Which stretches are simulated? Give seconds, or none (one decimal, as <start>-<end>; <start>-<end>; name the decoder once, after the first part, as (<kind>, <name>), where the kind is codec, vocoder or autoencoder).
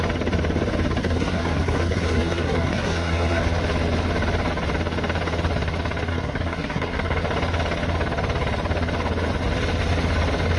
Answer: 1.0-3.4 (codec, SNAC); 6.1-7.2